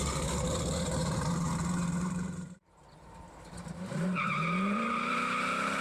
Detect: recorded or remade remade